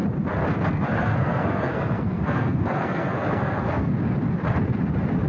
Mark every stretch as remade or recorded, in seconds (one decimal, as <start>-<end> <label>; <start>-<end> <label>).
0.0-0.7 recorded; 0.7-3.9 remade; 3.9-5.3 recorded